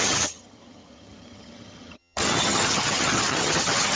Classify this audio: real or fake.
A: fake